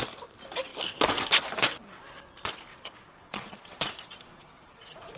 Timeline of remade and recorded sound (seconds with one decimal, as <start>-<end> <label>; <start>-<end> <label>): 0.0-2.7 recorded; 2.7-5.2 remade